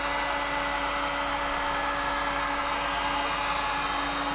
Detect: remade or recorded recorded